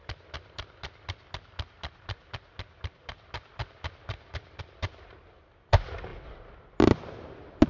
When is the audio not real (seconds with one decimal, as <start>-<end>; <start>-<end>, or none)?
none

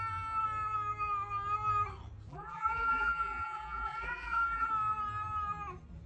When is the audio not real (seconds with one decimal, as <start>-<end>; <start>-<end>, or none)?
2.3-4.7

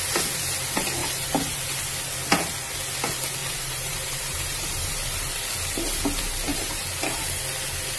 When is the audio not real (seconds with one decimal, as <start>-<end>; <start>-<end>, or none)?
1.0-1.8; 3.4-4.9; 6.5-7.2

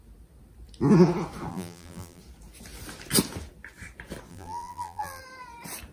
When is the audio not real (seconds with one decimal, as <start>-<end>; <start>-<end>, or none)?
1.5-2.2; 4.3-5.2

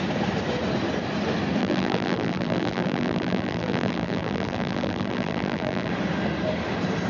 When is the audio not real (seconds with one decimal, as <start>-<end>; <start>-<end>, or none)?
1.6-5.9